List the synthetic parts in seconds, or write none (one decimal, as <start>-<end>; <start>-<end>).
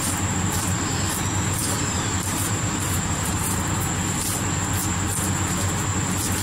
1.6-3.9